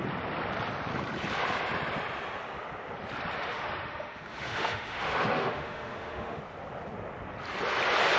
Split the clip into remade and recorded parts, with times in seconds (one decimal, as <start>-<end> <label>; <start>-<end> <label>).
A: 0.0-3.4 recorded; 3.4-6.4 remade; 6.4-8.2 recorded